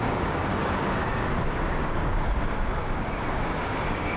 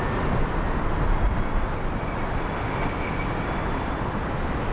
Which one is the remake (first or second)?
first